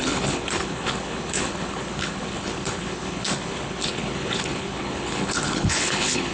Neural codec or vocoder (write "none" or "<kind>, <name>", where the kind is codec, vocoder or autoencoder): codec, HILCodec